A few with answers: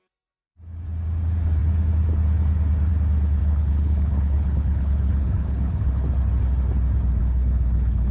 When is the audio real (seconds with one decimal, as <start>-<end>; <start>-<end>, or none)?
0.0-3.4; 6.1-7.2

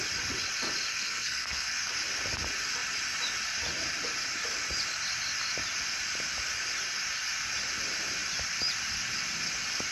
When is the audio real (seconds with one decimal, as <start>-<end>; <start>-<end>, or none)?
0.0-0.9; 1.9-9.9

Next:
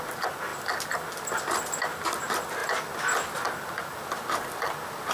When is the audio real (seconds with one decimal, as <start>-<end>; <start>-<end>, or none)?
0.0-5.1

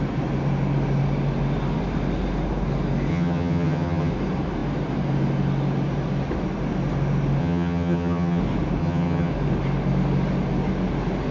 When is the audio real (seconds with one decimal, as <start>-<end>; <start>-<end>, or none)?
0.0-3.1; 4.1-7.4; 8.4-8.8; 9.3-11.3

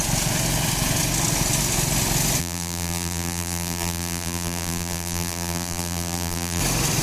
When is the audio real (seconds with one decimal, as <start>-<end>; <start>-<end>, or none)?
0.0-2.4; 6.6-7.0

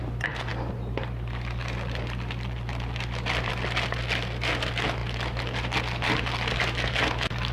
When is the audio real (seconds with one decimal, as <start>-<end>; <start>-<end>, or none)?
0.0-0.5; 3.5-7.5